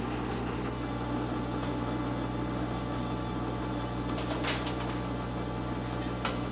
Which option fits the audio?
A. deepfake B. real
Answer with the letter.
B